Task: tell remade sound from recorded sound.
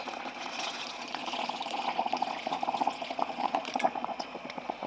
remade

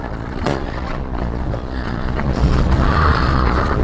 remade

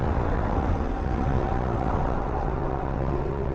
remade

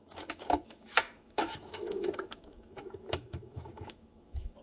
remade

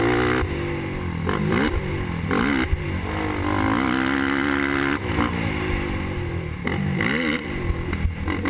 recorded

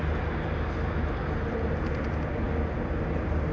recorded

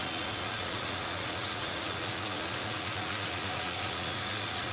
remade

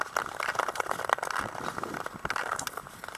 recorded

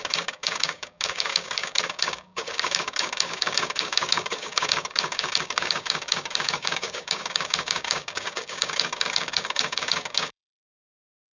remade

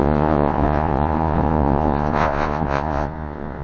remade